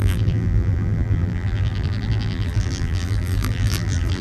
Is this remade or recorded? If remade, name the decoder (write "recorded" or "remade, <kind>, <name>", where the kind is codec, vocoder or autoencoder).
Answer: remade, vocoder, BigVGAN v2